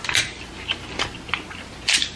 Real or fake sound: real